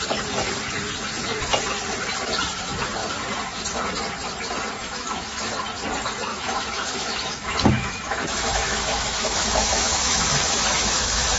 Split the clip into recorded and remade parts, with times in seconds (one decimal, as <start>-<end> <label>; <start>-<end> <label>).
0.0-4.8 recorded; 4.8-5.5 remade; 5.5-6.3 recorded; 6.3-11.4 remade